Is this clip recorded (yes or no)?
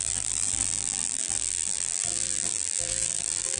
no